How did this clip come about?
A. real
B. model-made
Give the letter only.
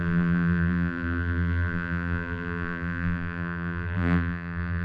B